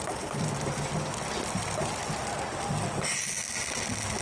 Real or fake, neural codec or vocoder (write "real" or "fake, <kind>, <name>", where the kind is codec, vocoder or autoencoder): real